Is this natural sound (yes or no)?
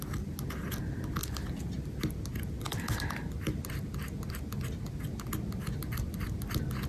yes